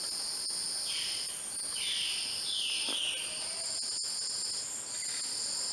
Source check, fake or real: real